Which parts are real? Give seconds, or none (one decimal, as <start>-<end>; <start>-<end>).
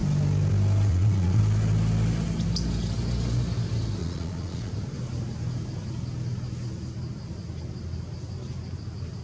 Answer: 0.0-0.9; 1.4-4.0; 4.7-9.2